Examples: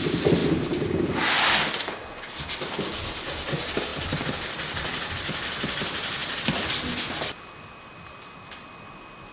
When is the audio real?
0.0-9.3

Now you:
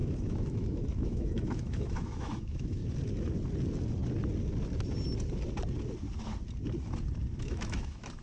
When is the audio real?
2.8-7.4